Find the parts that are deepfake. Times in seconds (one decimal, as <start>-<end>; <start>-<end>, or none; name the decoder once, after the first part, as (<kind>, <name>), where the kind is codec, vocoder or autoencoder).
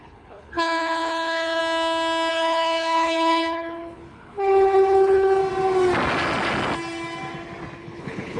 0.0-1.6 (codec, HILCodec); 2.3-5.4; 7.8-8.4